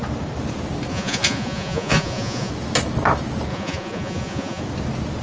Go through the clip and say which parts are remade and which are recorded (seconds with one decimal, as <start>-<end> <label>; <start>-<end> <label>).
0.0-0.9 recorded; 0.9-2.5 remade; 2.5-3.5 recorded; 3.5-4.6 remade; 4.6-5.2 recorded